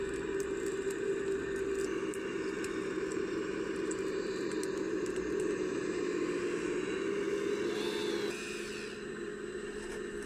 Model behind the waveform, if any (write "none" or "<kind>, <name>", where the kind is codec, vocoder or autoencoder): none